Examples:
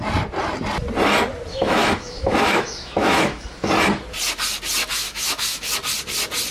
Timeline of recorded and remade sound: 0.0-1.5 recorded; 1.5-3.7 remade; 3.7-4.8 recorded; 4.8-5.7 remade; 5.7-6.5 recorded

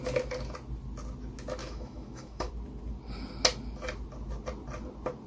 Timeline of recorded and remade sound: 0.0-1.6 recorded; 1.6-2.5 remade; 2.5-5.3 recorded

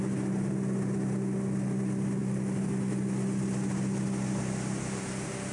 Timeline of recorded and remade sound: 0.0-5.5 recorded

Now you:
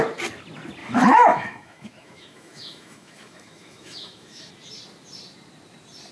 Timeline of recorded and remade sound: 0.0-0.8 recorded; 0.8-4.5 remade; 4.5-6.1 recorded

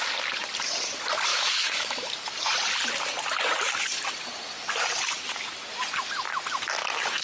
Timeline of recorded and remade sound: 0.0-1.3 recorded; 1.3-2.1 remade; 2.1-7.2 recorded

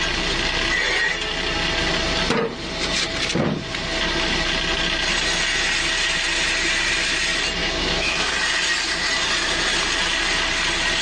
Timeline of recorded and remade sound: 0.0-7.6 recorded; 7.6-8.3 remade; 8.3-11.0 recorded

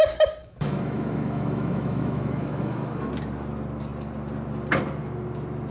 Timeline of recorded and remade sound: 0.0-0.4 recorded; 0.4-3.1 remade; 3.1-5.7 recorded